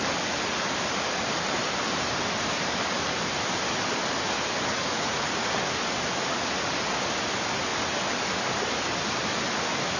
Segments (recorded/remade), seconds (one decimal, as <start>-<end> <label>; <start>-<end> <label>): 0.0-4.7 recorded; 4.7-5.6 remade; 5.6-10.0 recorded